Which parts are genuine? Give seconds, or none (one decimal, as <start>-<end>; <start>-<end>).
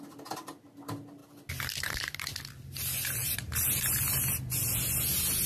0.0-1.2; 2.4-3.2; 4.4-5.5